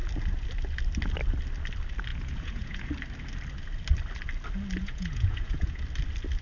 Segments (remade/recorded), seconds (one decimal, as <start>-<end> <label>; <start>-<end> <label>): 0.0-2.1 recorded; 2.1-2.9 remade; 2.9-4.8 recorded; 4.8-5.8 remade; 5.8-6.4 recorded